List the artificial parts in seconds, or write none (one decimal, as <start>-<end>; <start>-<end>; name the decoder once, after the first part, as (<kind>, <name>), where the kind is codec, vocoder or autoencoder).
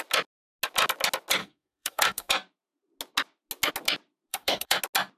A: 1.4-2.3 (codec, SNAC); 4.3-4.8